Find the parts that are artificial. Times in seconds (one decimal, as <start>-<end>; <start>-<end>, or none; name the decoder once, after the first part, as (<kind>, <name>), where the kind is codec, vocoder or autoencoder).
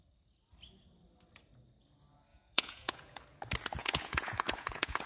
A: 2.3-3.2 (vocoder, Vocos); 3.8-5.1